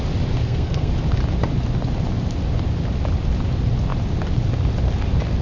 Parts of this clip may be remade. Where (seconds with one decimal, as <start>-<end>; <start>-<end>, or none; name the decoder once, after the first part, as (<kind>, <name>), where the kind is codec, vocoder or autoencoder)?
0.4-0.9 (codec, SNAC)